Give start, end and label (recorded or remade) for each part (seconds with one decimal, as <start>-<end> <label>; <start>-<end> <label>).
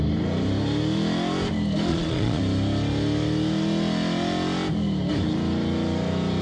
0.0-1.9 recorded; 1.9-2.4 remade; 2.4-6.4 recorded